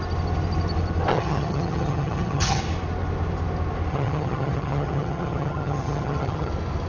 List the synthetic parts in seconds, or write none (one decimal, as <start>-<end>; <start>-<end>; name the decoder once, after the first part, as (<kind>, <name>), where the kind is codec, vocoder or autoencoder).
1.1-2.6 (vocoder, HiFi-GAN); 3.9-6.5